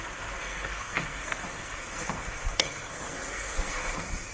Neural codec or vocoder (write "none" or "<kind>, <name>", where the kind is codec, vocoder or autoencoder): codec, SNAC